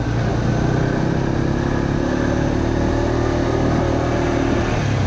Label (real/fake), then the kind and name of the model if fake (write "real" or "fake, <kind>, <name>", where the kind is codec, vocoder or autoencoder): real